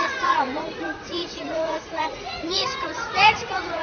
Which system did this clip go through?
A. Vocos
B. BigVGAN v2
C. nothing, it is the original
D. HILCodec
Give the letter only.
A